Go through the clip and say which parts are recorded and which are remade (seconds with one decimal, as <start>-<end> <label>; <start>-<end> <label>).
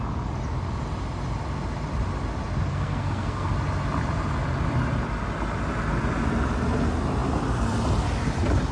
0.0-2.7 recorded; 2.7-3.5 remade; 3.5-8.7 recorded